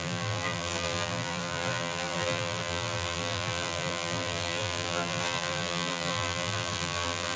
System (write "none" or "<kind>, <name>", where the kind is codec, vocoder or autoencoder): vocoder, BigVGAN v2